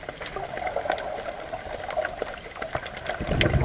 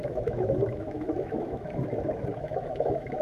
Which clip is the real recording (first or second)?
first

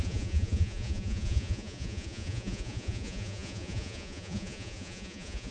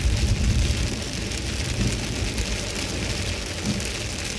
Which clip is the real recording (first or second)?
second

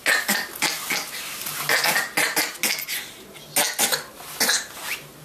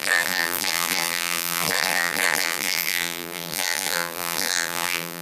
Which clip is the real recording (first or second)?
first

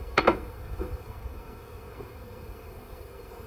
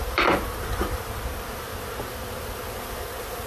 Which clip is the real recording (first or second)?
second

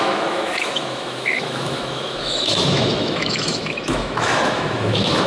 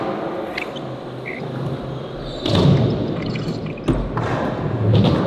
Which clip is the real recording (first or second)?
second